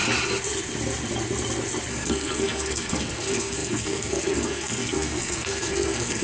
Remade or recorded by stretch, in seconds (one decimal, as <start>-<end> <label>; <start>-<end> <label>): 0.0-1.9 recorded; 1.9-6.2 remade